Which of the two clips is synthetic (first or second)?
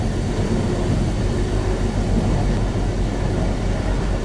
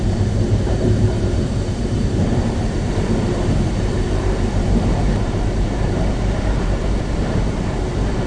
second